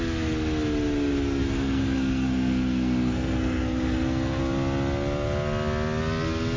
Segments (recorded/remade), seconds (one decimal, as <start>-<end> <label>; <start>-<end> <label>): 0.0-1.4 recorded; 1.4-4.4 remade; 4.4-6.6 recorded